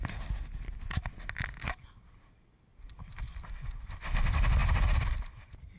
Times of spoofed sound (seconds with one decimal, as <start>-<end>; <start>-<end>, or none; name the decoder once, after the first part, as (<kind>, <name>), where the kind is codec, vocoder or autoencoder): none